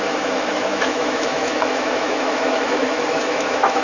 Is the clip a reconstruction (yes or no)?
yes